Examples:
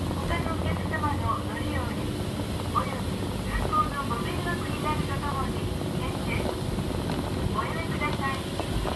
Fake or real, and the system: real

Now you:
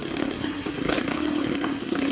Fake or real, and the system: fake, codec, SNAC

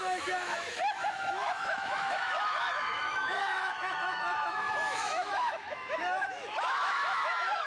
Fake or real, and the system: fake, autoencoder, DAC-VAE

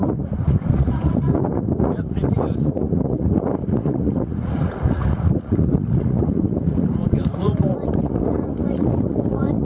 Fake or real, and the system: fake, vocoder, Vocos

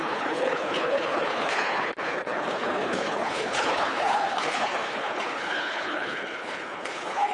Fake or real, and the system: fake, codec, HILCodec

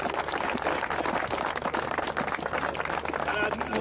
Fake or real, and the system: real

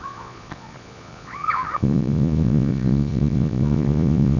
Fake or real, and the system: fake, vocoder, Vocos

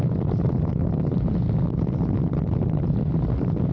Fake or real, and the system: real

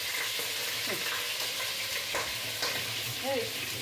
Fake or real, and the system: real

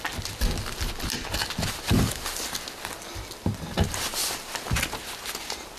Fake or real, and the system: real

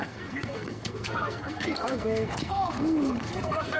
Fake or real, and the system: fake, codec, SNAC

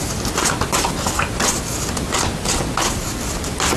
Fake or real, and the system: real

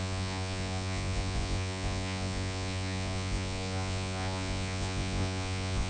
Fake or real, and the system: fake, vocoder, Vocos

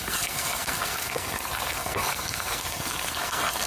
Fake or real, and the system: fake, codec, SNAC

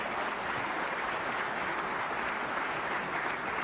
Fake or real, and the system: real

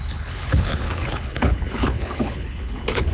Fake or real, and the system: fake, codec, HILCodec